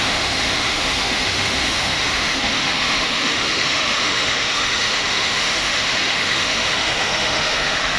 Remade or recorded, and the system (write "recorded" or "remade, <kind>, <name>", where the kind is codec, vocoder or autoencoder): remade, autoencoder, DAC-VAE